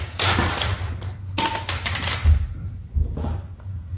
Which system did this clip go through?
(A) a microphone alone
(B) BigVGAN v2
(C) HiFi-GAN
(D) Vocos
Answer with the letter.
A